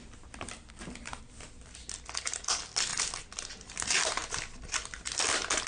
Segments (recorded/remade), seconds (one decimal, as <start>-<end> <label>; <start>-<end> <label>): 0.0-5.7 recorded